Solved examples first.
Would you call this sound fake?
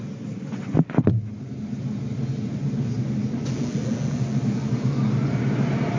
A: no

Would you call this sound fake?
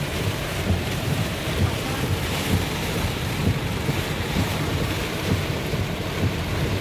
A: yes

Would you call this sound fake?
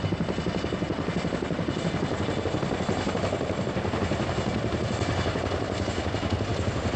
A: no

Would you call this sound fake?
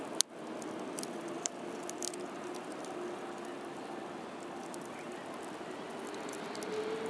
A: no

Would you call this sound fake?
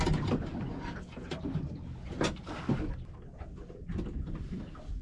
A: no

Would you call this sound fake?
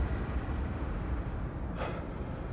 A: yes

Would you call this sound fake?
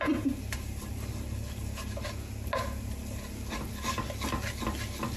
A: no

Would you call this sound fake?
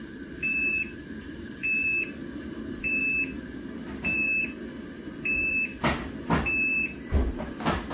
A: yes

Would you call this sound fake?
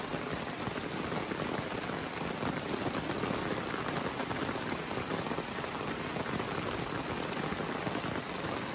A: no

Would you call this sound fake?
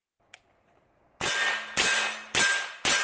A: no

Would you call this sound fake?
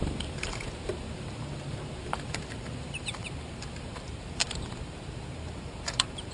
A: yes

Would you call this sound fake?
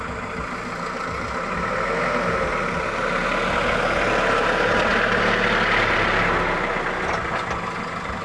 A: no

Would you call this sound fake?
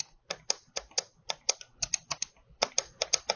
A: no